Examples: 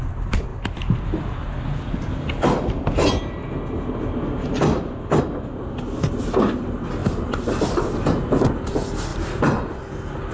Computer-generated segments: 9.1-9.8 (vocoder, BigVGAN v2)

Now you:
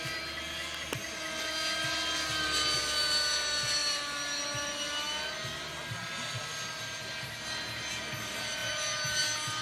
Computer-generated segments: none

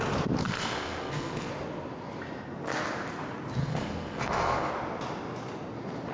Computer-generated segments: 0.4-1.5 (codec, SNAC); 3.6-4.7

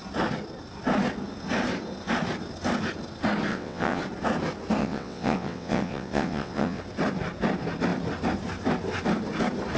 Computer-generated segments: 3.5-4.0 (vocoder, WaveNeXt); 4.8-6.8